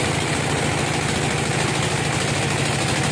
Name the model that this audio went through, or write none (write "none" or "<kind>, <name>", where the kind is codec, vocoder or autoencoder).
none